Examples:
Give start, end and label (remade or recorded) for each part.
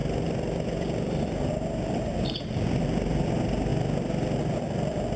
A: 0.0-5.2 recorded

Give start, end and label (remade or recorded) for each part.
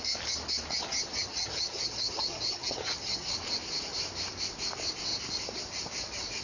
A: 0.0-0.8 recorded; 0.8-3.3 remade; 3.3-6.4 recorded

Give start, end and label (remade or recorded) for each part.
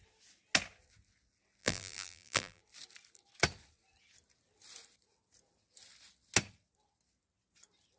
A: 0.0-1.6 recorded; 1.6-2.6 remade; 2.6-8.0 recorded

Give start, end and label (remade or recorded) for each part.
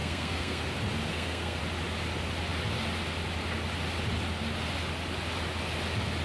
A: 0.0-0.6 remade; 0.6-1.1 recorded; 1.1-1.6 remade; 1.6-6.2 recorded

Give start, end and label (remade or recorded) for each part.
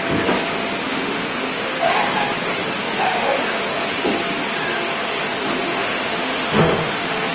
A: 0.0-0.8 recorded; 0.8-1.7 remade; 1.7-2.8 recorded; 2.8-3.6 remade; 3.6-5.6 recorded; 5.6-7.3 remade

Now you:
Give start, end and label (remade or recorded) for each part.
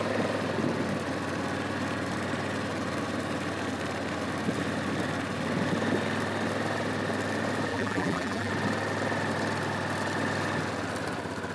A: 0.0-7.7 recorded; 7.7-8.5 remade; 8.5-11.5 recorded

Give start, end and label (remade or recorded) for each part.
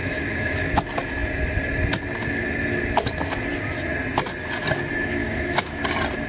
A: 0.0-0.7 remade; 0.7-5.2 recorded; 5.2-5.8 remade; 5.8-6.3 recorded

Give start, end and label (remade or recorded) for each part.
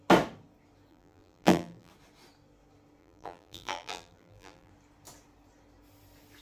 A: 0.0-0.9 recorded; 0.9-1.9 remade; 1.9-3.0 recorded; 3.0-4.7 remade; 4.7-6.4 recorded